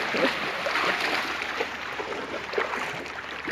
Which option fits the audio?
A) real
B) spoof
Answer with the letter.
A